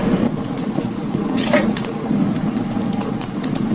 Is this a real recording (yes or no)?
no